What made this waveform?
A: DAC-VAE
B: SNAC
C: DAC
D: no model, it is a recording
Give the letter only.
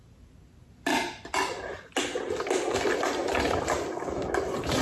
D